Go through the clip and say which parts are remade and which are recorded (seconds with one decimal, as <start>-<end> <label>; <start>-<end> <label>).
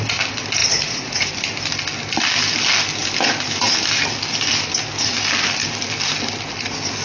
0.0-0.6 recorded; 0.6-1.3 remade; 1.3-7.0 recorded